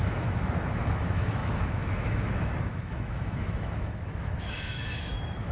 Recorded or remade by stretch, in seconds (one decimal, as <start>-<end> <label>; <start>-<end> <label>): 0.0-5.5 remade